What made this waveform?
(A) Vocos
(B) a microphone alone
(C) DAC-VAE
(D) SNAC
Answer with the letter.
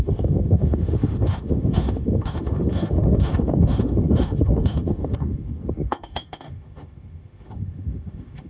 C